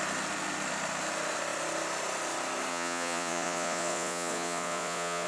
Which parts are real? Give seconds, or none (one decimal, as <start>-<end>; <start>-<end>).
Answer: 0.0-2.7